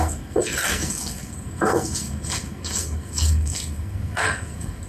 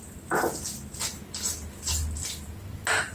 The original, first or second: second